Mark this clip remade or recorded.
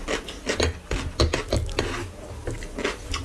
recorded